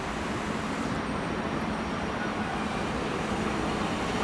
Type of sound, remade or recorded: recorded